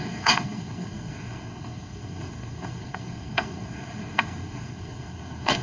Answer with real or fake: fake